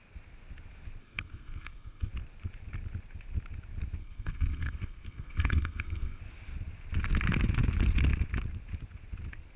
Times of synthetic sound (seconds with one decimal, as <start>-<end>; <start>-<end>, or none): 1.0-2.1; 4.0-6.2